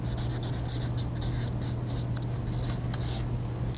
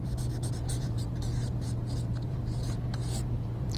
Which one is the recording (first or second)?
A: first